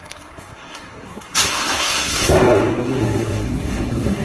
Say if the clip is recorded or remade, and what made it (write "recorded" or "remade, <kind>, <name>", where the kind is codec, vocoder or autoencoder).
remade, codec, SNAC